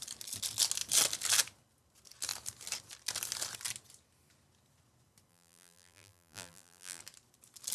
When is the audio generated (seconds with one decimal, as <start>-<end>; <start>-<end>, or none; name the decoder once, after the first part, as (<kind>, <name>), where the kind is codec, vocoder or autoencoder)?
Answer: 5.3-7.0 (vocoder, BigVGAN v2)

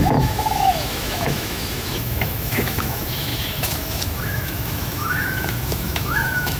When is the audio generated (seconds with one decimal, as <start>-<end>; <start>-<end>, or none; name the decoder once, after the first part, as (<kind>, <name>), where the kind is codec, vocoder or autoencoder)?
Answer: 0.0-6.6 (autoencoder, DAC-VAE)